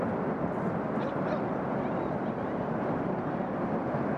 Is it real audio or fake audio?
real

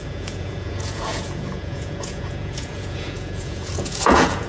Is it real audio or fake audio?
fake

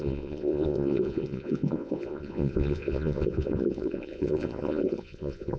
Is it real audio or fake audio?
fake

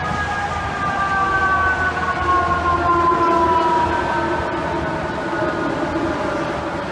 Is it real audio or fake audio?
real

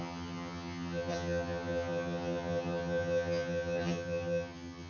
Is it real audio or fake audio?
fake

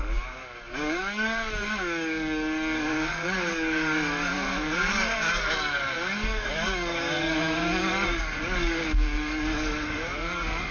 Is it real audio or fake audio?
fake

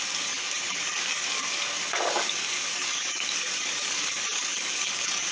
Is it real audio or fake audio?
fake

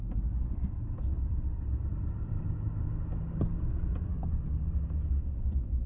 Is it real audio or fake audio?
real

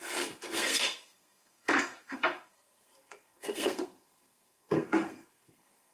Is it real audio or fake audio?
fake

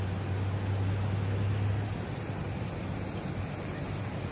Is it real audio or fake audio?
real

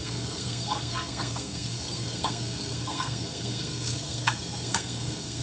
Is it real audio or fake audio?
fake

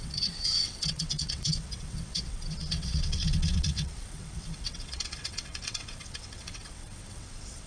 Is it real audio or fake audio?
fake